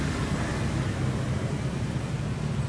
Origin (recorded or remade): recorded